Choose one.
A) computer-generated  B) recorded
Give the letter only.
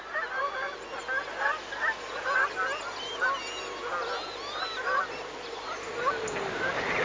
B